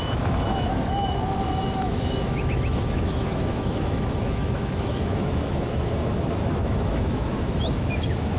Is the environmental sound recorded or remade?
remade